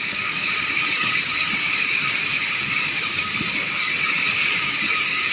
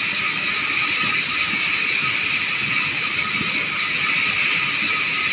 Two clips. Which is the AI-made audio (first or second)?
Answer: first